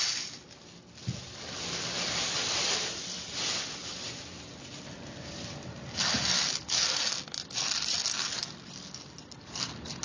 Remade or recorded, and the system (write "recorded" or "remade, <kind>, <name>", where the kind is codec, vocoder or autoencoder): recorded